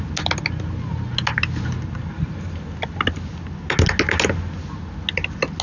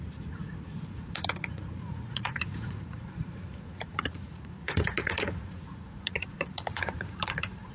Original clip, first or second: first